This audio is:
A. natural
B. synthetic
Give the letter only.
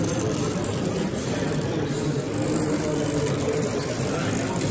A